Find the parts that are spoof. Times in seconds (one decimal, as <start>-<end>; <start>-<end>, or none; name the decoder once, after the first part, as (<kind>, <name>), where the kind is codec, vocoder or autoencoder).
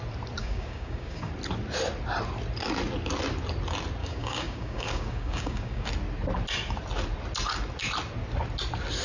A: 0.4-1.3 (codec, DAC); 4.0-5.9